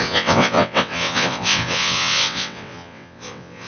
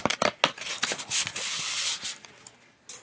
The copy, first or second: first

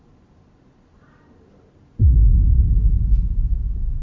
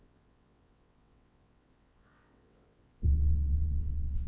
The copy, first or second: second